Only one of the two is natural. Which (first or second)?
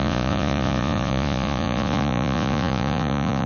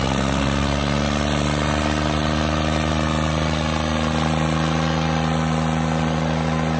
second